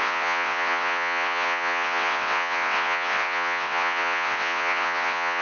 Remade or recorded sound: remade